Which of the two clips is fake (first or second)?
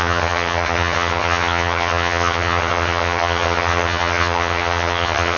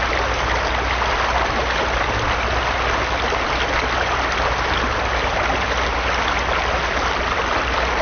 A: first